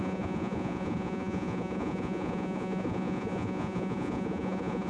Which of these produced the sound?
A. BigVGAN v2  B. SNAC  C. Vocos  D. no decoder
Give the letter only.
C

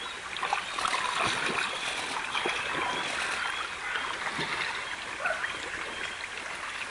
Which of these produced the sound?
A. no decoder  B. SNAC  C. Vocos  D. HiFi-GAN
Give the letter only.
A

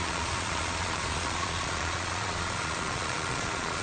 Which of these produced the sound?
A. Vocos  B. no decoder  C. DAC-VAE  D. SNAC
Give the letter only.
A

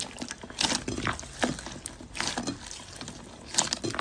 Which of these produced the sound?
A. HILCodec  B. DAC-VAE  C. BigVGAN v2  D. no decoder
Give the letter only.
D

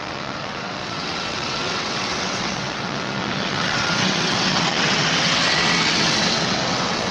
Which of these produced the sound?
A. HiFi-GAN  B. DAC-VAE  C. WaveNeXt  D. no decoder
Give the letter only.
C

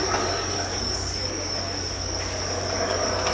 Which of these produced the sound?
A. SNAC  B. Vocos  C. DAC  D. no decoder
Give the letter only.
C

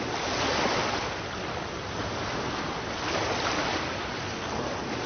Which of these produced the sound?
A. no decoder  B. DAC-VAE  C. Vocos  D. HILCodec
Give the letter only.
A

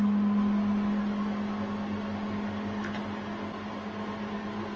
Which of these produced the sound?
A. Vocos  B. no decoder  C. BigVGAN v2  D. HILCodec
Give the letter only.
B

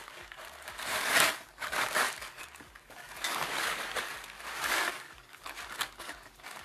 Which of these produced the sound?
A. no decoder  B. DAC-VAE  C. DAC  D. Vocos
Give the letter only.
C